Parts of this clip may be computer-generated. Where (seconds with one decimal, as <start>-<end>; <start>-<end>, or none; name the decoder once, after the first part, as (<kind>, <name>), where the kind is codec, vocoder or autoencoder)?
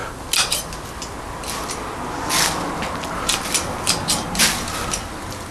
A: none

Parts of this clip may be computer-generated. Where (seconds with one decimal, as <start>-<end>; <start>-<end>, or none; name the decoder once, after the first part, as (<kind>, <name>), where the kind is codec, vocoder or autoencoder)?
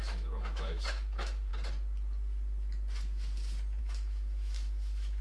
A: 0.0-1.5 (autoencoder, DAC-VAE); 3.8-5.2